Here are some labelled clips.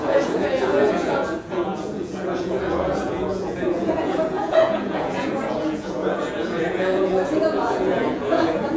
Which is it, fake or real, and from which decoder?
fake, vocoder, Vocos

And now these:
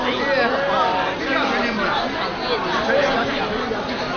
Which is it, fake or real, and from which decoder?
real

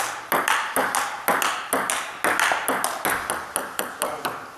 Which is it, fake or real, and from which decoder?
real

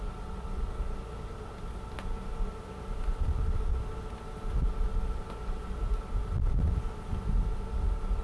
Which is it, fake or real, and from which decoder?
real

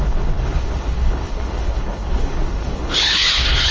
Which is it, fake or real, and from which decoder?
fake, codec, HILCodec